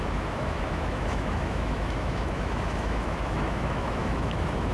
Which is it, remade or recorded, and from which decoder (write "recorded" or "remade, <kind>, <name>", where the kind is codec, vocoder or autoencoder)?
remade, autoencoder, DAC-VAE